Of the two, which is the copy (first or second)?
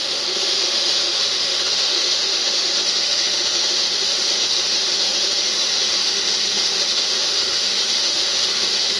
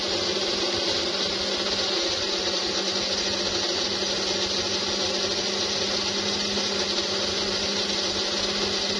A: first